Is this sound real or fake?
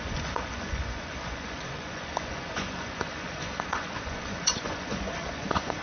fake